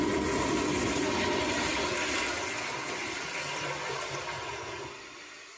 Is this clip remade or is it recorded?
recorded